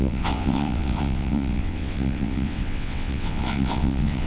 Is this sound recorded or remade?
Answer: remade